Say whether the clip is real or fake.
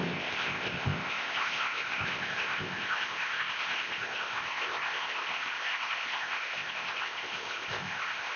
fake